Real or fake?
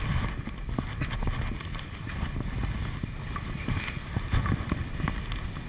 real